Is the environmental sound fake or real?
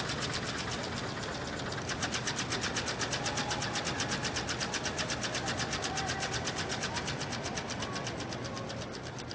real